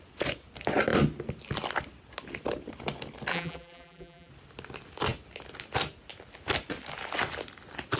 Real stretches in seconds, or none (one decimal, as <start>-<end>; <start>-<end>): 0.0-3.3; 4.3-8.0